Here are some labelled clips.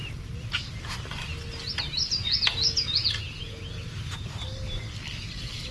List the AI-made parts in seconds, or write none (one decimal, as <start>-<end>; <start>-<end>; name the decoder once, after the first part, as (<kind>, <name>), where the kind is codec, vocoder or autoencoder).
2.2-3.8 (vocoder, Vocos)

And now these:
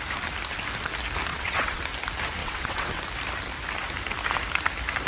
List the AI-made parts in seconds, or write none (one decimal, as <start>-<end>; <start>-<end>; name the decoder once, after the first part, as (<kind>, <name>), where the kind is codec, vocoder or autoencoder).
1.3-1.8 (vocoder, WaveNeXt); 2.4-3.0

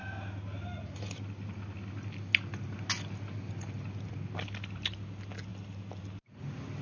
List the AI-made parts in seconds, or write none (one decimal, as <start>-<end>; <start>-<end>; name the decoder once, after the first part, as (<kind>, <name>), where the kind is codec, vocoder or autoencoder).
none

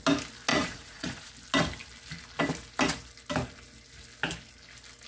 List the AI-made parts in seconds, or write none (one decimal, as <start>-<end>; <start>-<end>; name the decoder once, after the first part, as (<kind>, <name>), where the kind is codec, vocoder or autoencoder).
0.5-1.3 (vocoder, Vocos)

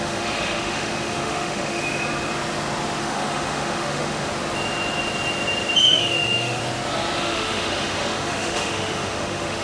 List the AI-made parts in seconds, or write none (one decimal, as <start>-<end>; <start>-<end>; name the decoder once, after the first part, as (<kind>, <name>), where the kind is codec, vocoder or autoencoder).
0.0-1.8 (autoencoder, DAC-VAE); 3.0-4.3; 5.8-6.6; 7.2-9.6

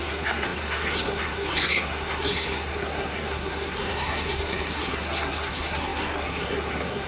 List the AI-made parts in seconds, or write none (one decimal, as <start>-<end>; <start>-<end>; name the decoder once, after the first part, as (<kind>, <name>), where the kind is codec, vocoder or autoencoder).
0.0-7.1 (codec, SNAC)

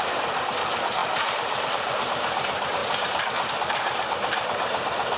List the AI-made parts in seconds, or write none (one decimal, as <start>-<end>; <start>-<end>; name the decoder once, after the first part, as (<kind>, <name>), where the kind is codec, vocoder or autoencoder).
0.0-5.2 (vocoder, BigVGAN v2)

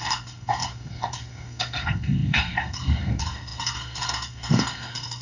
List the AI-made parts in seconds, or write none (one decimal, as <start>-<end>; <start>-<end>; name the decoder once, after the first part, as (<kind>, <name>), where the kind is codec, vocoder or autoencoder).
0.0-5.2 (codec, SNAC)